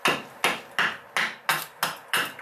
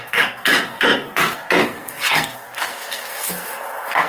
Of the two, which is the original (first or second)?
first